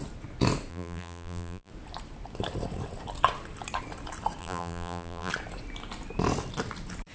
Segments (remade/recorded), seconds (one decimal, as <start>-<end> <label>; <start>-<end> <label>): 0.0-0.7 recorded; 0.7-1.7 remade; 1.7-4.4 recorded; 4.4-5.3 remade; 5.3-7.1 recorded